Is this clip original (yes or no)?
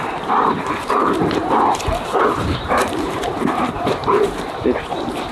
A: no